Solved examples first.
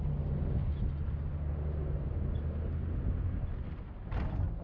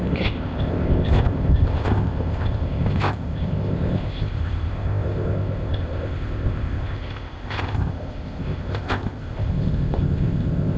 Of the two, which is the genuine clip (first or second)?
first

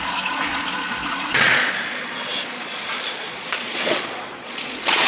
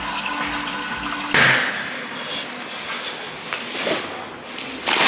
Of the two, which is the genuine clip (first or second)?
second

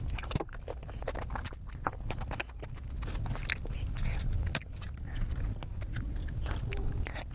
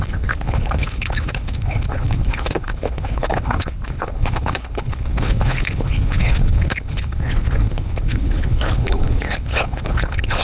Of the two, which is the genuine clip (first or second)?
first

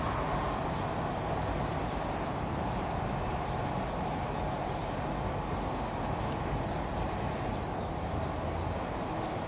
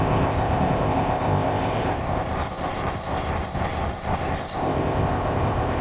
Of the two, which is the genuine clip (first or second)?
first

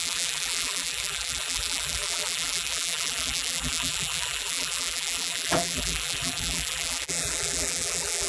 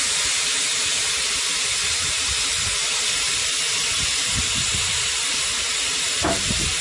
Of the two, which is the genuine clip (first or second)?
second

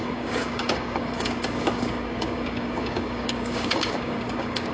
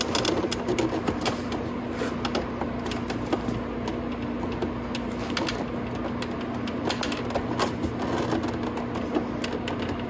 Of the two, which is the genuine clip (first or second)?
second